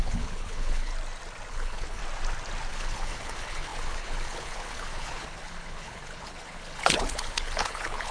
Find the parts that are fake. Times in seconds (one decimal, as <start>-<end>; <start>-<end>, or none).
0.0-0.9; 1.5-2.0; 2.7-8.1